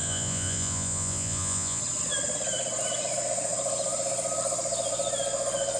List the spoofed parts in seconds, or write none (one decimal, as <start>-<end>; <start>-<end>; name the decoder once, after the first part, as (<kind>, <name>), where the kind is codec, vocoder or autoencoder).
0.0-1.8 (vocoder, Vocos)